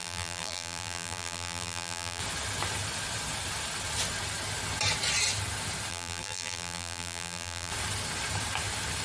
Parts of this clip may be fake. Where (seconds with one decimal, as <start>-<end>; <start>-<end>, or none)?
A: 0.0-2.2; 5.9-7.7